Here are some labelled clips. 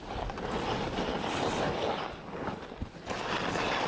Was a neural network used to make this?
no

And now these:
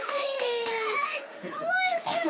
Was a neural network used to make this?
yes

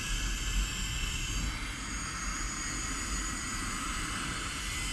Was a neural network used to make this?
no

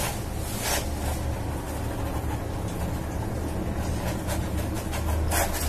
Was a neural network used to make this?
no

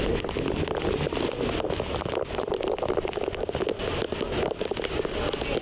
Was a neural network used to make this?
no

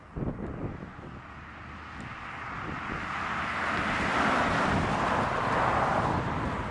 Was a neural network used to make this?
no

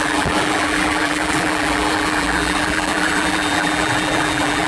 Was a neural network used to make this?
yes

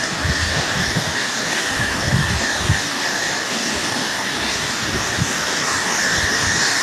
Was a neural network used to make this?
yes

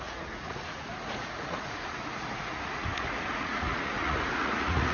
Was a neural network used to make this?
yes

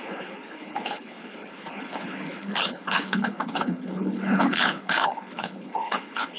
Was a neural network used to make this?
yes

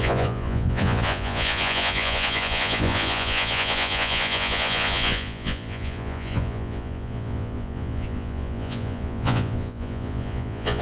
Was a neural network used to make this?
yes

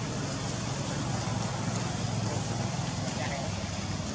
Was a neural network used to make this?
no